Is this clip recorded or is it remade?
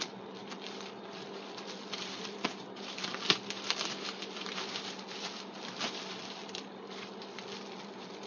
remade